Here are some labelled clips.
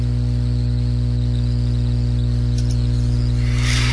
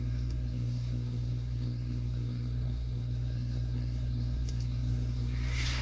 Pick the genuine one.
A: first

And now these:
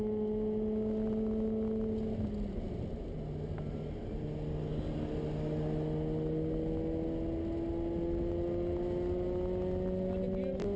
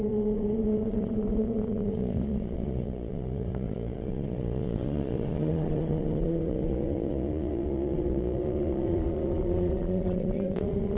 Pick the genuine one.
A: first